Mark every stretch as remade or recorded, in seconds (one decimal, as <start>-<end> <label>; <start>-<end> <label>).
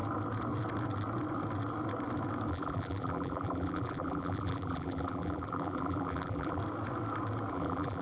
0.0-2.5 recorded; 2.5-6.6 remade; 6.6-7.5 recorded; 7.5-8.0 remade